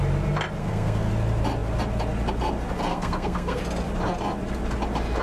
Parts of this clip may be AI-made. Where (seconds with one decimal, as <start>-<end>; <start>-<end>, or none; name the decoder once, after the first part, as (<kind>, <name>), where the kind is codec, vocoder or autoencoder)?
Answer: 0.6-1.1 (codec, SNAC); 2.9-3.6